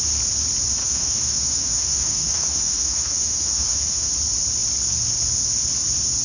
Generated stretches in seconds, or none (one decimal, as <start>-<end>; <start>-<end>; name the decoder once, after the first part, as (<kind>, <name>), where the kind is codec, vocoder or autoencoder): 0.8-4.1 (autoencoder, DAC-VAE)